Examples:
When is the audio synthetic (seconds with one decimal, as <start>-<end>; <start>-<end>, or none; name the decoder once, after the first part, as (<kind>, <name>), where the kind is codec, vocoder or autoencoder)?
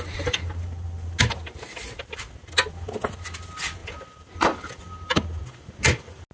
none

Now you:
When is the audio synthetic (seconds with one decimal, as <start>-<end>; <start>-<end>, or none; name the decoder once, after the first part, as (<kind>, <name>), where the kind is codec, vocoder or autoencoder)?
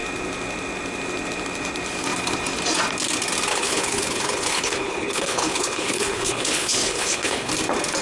3.5-7.5 (codec, HILCodec)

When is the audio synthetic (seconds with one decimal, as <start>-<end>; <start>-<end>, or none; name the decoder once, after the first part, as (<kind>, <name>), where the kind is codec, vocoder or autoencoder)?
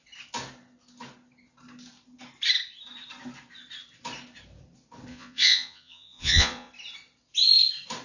5.1-6.7 (vocoder, Vocos)